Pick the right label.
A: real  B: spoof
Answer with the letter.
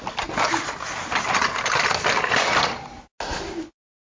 A